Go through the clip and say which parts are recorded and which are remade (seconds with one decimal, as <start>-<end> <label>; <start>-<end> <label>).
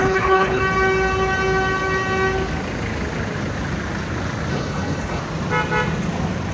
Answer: 0.0-0.6 remade; 0.6-4.5 recorded; 4.5-5.2 remade; 5.2-6.5 recorded